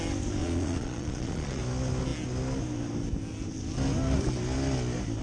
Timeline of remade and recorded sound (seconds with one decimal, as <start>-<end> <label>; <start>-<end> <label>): 0.0-0.4 recorded; 0.4-1.6 remade; 1.6-5.2 recorded